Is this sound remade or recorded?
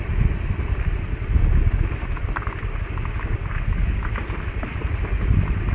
recorded